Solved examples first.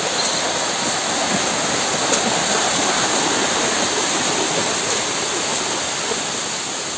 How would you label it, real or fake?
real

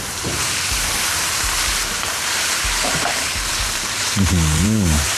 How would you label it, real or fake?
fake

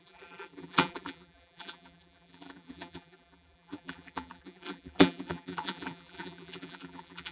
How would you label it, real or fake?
fake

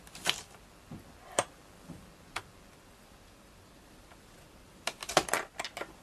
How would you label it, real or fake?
real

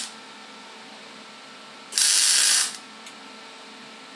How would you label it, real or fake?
real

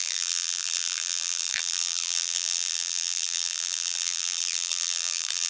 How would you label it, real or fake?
fake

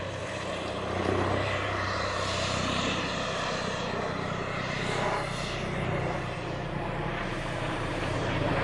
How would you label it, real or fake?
fake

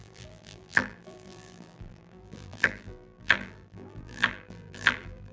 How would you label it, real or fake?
fake